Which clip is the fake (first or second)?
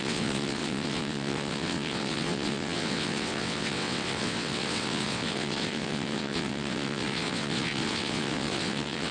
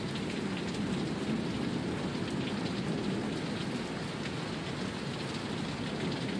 first